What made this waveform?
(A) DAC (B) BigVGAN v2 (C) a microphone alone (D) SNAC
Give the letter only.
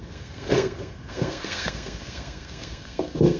D